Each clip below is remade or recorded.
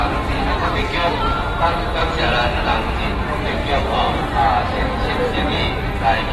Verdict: recorded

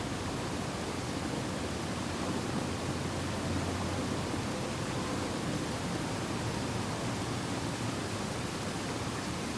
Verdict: recorded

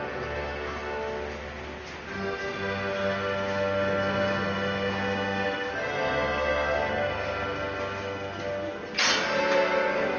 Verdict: recorded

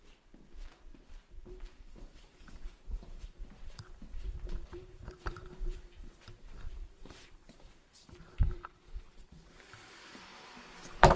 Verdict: remade